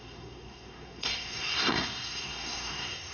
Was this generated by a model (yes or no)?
yes